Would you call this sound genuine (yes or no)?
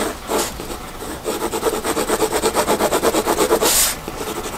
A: yes